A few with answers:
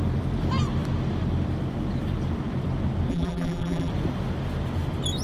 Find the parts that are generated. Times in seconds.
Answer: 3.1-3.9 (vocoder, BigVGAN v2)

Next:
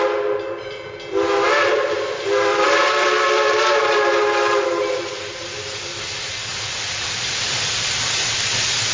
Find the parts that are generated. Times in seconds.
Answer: 2.5-4.1 (vocoder, BigVGAN v2); 6.5-8.0

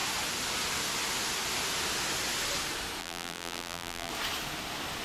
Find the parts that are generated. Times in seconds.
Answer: 3.0-4.1 (vocoder, BigVGAN v2)

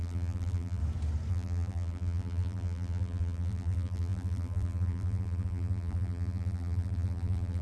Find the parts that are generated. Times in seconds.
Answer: 0.0-0.8 (vocoder, BigVGAN v2); 1.3-7.6